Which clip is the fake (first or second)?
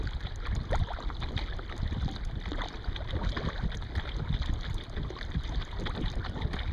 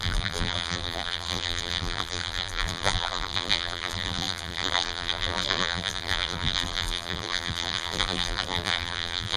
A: second